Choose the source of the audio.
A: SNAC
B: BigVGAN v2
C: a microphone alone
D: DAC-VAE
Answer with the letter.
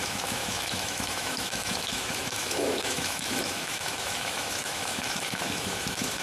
D